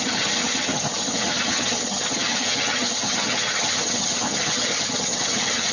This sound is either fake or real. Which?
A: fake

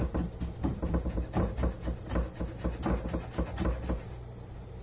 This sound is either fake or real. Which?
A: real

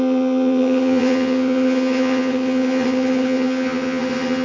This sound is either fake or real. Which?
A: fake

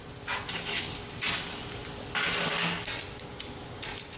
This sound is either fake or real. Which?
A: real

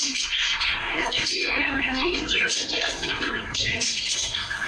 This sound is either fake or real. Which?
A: fake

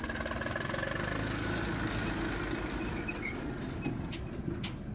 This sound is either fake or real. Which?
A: real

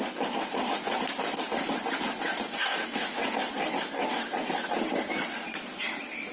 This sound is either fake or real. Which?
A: real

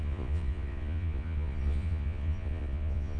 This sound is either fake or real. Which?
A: fake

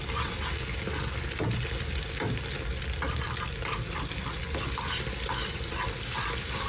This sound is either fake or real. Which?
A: real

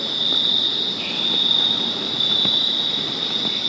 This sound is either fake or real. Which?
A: real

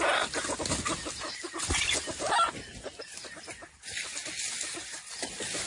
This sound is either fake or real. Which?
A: real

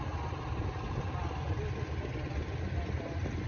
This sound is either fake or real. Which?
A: real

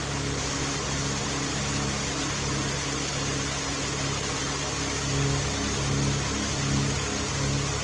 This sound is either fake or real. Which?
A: real